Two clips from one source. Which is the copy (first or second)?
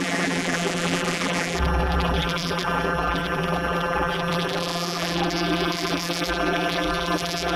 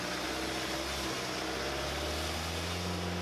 first